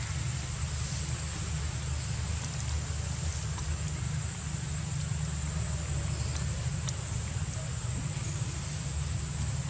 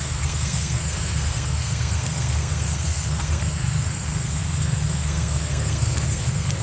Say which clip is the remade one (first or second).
second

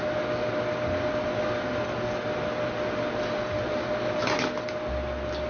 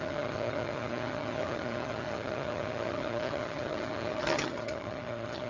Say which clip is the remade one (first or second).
second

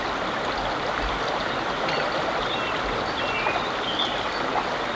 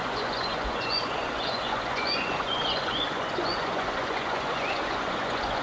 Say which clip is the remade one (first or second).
second